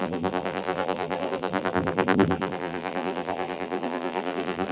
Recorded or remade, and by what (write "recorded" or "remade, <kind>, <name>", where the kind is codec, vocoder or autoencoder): remade, vocoder, BigVGAN v2